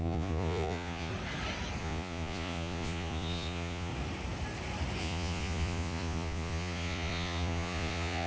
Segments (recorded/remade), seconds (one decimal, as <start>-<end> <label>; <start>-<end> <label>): 0.0-1.1 remade; 1.1-1.8 recorded; 1.8-3.9 remade; 3.9-5.0 recorded; 5.0-8.3 remade